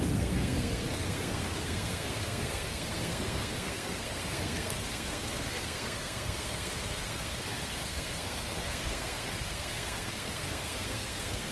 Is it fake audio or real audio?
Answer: fake